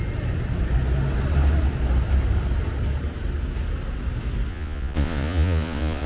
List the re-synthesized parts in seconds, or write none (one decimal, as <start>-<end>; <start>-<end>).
4.5-6.1